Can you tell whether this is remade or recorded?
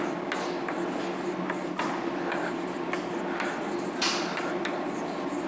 recorded